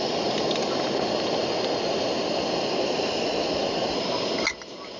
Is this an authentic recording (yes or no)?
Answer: yes